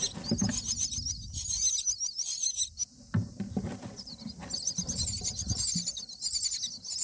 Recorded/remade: recorded